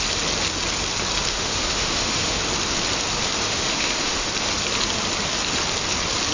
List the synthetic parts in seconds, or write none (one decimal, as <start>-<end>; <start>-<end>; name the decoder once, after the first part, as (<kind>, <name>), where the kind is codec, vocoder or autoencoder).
1.3-2.4 (autoencoder, DAC-VAE); 3.4-4.3